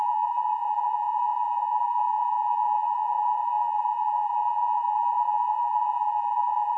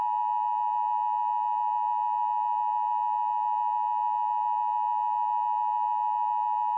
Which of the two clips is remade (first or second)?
first